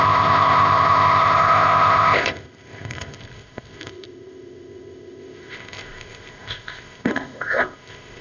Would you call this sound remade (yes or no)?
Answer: yes